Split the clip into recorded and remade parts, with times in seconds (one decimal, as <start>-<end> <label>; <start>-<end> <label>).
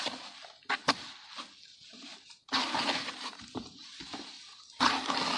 0.0-5.4 recorded